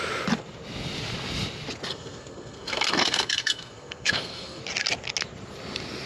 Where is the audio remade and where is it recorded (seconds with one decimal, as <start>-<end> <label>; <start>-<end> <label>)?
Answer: 0.0-1.9 recorded; 1.9-4.6 remade; 4.6-6.1 recorded